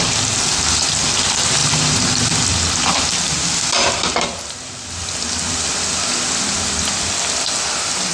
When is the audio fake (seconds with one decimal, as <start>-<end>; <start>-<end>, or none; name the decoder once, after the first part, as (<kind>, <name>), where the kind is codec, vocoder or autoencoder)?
none